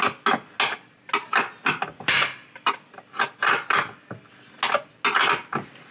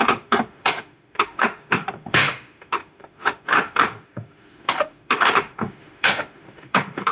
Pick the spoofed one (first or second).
second